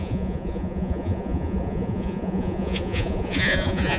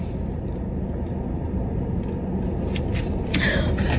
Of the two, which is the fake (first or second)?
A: first